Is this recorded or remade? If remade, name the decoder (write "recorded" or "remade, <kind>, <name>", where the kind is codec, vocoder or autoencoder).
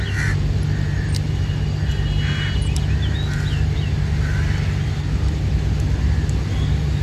recorded